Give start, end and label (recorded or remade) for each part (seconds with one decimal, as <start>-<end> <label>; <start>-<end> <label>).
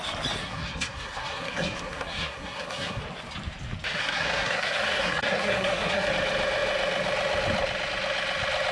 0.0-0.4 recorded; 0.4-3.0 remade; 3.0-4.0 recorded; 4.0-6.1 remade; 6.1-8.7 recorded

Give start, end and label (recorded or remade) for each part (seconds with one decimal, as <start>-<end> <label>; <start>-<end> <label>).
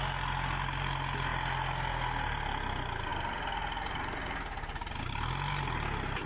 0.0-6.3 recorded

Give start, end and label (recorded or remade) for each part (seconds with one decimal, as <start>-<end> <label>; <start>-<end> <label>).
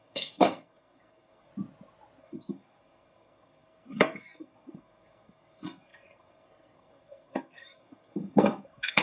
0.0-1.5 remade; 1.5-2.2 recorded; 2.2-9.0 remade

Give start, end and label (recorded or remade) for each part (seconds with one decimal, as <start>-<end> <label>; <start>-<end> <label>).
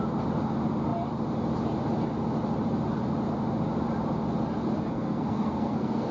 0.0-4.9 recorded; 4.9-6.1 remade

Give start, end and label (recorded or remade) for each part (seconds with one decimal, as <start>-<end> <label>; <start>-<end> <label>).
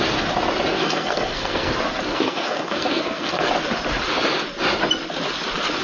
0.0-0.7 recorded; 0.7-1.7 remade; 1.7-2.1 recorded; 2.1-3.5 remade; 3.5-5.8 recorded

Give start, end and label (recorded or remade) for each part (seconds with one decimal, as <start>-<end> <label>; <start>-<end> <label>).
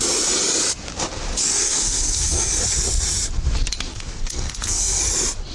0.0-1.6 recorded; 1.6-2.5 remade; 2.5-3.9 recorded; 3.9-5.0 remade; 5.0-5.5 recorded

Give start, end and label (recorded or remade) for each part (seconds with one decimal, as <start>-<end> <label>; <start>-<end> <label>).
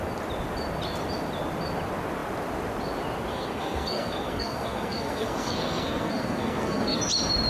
0.0-3.3 recorded; 3.3-7.0 remade; 7.0-7.5 recorded